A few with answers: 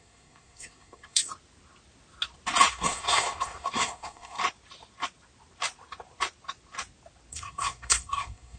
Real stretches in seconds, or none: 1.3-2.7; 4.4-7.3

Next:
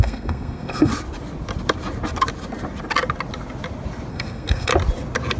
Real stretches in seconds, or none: 0.9-4.1; 4.7-5.4

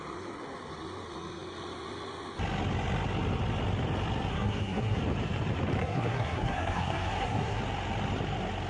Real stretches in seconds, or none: 0.0-4.3; 5.0-5.8; 7.6-8.7

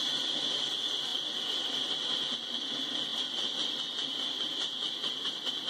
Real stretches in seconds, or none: 0.0-5.7

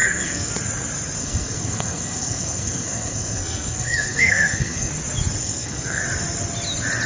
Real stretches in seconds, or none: 0.5-1.2; 4.9-5.4; 6.0-7.1

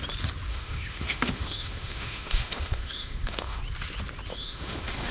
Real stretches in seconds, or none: 0.0-0.5; 3.6-4.3

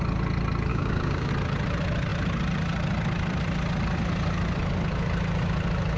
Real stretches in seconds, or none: 0.0-0.7; 1.3-6.0